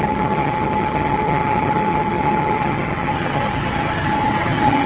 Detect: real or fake fake